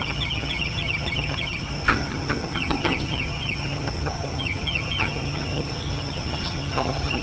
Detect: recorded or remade remade